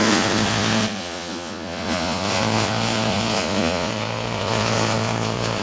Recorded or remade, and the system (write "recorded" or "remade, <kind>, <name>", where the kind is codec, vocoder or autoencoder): remade, vocoder, Vocos